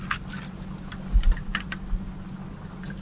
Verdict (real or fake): real